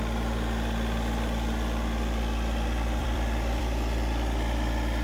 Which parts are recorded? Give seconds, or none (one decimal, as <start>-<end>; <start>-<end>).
0.0-3.0; 3.6-5.0